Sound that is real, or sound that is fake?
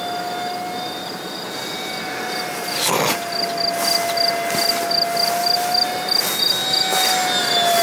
real